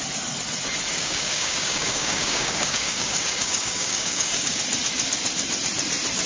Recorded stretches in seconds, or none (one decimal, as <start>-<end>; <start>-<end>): 0.0-0.9; 4.6-6.3